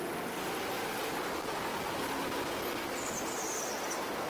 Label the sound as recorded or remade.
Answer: recorded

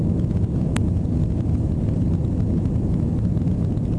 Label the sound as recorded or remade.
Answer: recorded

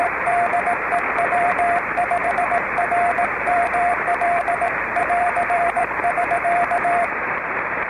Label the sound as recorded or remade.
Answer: remade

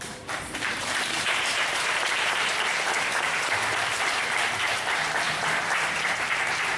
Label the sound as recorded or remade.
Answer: remade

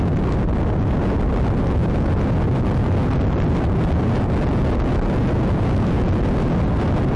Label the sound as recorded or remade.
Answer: recorded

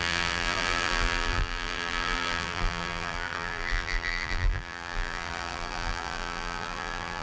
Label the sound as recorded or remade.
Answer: remade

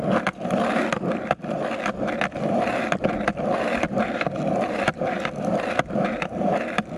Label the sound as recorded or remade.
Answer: remade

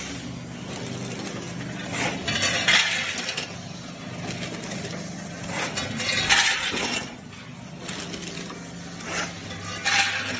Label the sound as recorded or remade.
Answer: recorded